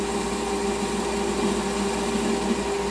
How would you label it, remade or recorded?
recorded